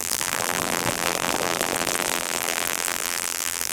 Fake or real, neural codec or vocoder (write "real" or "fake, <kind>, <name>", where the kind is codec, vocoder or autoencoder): fake, vocoder, BigVGAN v2